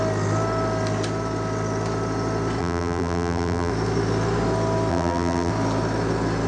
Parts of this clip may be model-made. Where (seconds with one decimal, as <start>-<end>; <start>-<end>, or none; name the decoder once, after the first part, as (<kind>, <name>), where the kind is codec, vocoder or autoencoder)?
2.6-3.7 (vocoder, BigVGAN v2); 4.9-5.5